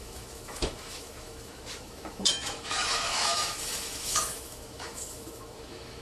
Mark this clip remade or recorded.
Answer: remade